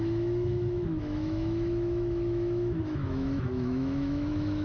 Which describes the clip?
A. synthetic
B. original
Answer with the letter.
A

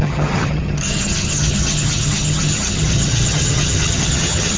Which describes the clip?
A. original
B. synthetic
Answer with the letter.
B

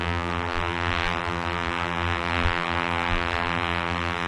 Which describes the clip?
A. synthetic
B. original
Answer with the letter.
A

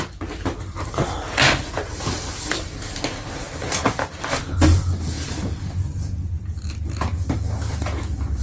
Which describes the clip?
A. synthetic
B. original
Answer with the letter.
B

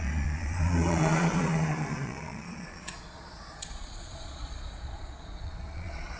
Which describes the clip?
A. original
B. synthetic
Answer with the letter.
B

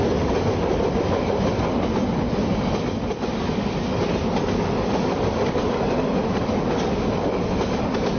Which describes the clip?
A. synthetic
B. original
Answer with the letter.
B